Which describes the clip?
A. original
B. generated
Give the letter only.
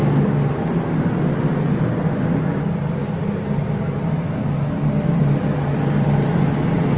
A